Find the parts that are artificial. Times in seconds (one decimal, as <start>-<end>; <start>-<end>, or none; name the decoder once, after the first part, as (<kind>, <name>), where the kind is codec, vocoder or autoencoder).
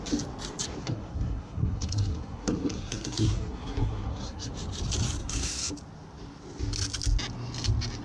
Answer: 0.8-4.5 (codec, SNAC); 5.2-5.7